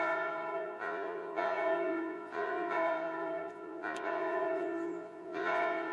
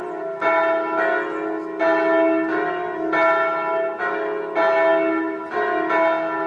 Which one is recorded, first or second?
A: second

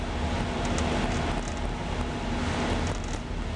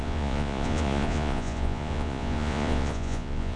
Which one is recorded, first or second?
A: first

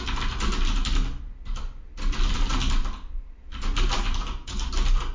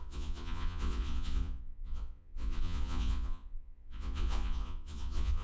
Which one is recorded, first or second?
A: first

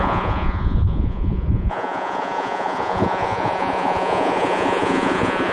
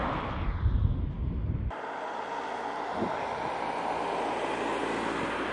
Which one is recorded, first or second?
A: second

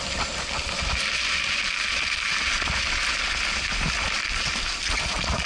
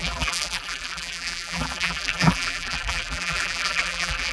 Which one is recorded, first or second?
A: first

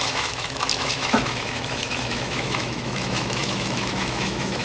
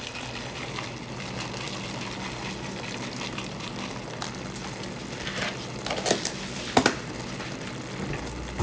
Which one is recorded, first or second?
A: second